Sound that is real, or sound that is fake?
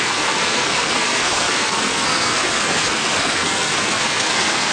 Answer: fake